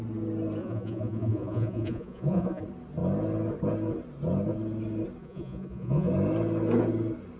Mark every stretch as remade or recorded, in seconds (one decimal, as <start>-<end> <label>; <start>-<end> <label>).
0.0-0.6 recorded; 0.6-2.6 remade; 2.6-5.2 recorded; 5.2-6.1 remade; 6.1-7.4 recorded

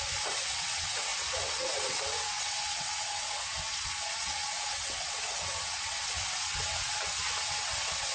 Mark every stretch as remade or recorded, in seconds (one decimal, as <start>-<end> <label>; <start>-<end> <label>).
0.0-8.1 remade

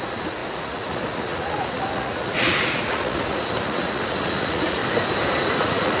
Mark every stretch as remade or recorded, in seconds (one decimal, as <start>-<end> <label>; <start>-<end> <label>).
0.0-4.8 remade; 4.8-5.6 recorded; 5.6-6.0 remade

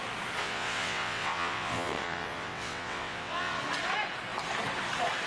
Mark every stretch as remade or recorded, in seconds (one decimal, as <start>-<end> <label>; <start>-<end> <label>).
0.0-0.4 recorded; 0.4-3.6 remade; 3.6-5.3 recorded